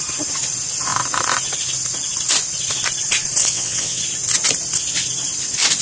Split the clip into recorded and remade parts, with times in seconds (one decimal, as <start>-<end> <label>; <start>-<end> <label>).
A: 0.0-3.4 recorded; 3.4-4.0 remade; 4.0-5.8 recorded